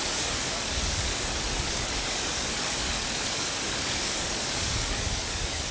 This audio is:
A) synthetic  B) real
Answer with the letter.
A